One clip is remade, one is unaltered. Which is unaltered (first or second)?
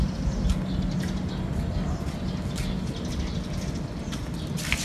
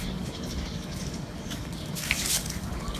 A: first